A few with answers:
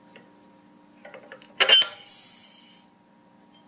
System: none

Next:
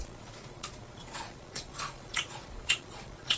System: vocoder, Vocos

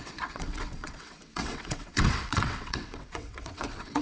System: vocoder, WaveNeXt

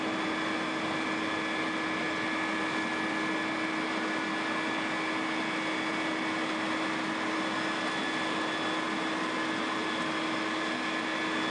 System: none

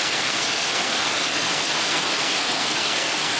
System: codec, SNAC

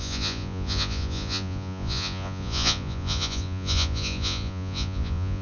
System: vocoder, Vocos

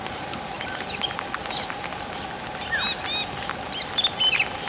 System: none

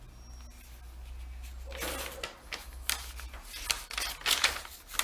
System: none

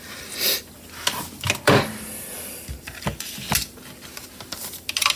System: none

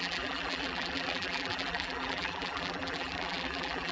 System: vocoder, BigVGAN v2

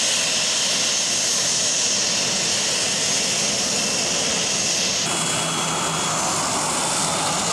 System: none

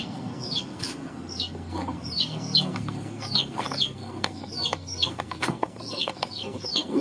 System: codec, SNAC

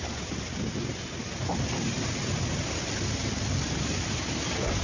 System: none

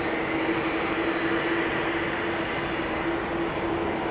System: none